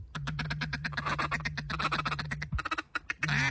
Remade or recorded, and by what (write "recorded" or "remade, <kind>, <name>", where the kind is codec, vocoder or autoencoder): recorded